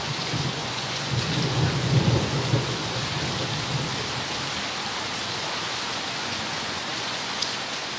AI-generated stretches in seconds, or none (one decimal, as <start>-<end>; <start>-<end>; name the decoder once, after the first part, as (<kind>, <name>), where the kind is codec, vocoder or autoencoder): 0.0-3.2 (vocoder, Vocos); 5.2-8.0